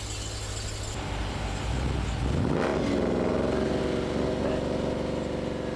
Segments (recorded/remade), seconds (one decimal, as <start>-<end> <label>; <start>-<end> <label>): 0.0-5.8 recorded

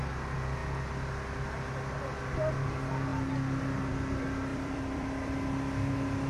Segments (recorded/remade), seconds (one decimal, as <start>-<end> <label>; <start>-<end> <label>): 0.0-4.5 recorded; 4.5-5.5 remade; 5.5-6.3 recorded

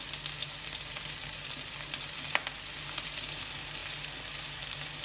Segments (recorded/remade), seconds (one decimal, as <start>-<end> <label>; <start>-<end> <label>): 0.0-5.0 recorded